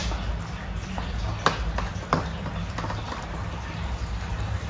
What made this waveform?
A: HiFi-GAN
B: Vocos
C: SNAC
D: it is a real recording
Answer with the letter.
D